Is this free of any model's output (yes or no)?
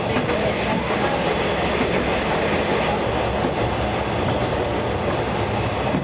yes